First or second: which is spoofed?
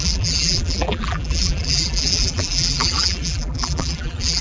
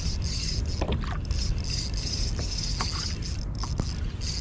first